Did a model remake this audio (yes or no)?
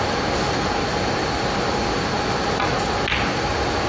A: no